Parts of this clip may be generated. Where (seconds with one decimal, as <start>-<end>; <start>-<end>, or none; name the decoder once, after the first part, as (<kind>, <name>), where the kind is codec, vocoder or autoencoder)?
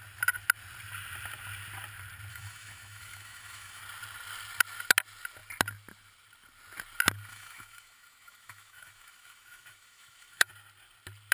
2.3-3.8 (autoencoder, DAC-VAE); 7.3-10.5